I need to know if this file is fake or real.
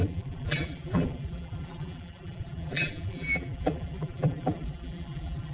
fake